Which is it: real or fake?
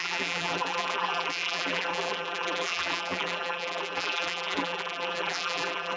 fake